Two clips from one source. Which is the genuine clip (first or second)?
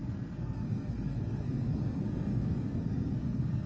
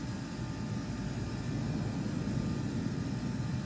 second